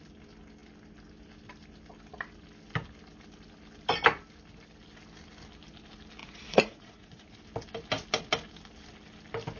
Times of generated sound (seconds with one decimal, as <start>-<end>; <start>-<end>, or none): 6.2-7.3